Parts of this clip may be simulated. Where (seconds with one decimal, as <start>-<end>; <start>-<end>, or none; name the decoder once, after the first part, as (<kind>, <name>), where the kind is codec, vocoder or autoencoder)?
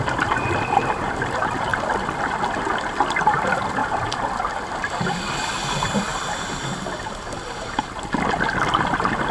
0.0-1.7 (vocoder, BigVGAN v2); 3.2-6.1; 8.7-9.3